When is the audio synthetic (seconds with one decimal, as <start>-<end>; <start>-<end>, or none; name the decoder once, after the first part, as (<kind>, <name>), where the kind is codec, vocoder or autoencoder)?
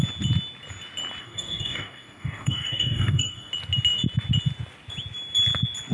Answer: 1.2-3.5 (codec, DAC)